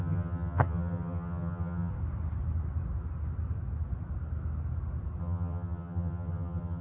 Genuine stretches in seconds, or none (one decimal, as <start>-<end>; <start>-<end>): 1.9-5.2